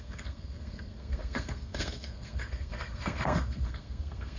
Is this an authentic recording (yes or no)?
no